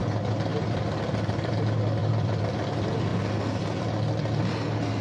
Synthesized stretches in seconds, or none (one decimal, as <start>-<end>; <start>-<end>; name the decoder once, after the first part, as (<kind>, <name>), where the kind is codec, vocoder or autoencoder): 0.5-1.5 (vocoder, BigVGAN v2); 2.0-2.6